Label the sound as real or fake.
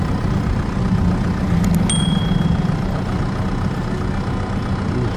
real